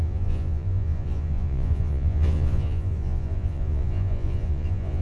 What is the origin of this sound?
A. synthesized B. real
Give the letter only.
A